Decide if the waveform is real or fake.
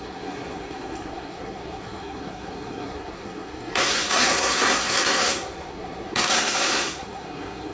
fake